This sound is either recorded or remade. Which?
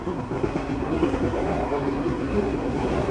remade